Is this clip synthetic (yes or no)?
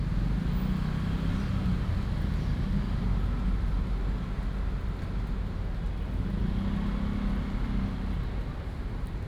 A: no